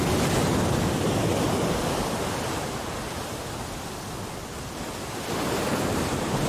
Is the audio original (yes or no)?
yes